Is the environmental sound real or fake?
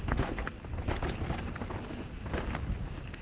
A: real